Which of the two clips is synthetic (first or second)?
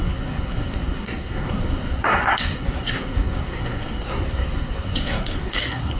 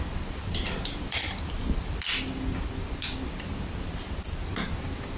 first